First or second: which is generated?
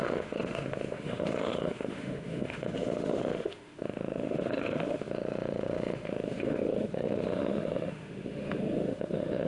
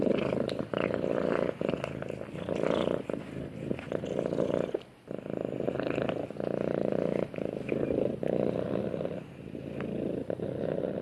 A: first